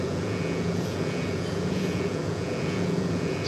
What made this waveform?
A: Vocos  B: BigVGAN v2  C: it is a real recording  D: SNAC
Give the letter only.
A